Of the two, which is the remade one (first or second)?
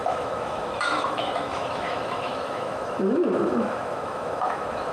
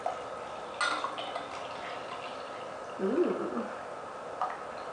first